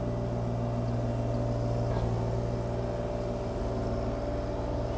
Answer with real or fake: real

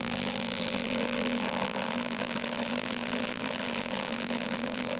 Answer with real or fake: fake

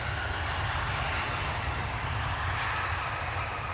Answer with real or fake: real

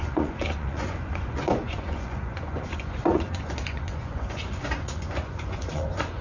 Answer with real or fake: fake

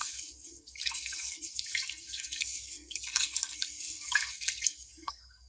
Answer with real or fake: fake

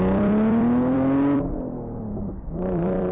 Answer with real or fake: fake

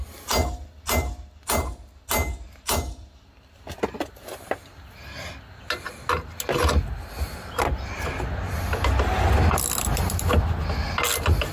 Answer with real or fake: real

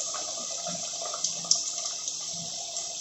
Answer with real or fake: fake